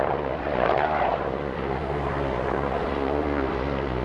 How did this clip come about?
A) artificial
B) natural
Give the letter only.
A